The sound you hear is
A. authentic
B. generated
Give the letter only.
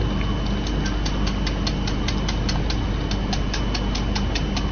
A